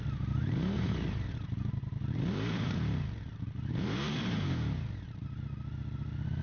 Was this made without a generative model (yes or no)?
no